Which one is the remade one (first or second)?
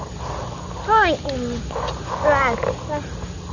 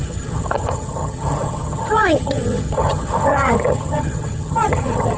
second